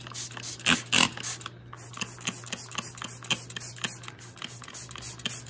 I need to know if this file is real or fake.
real